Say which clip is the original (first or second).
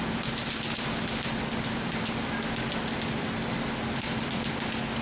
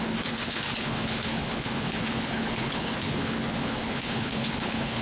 first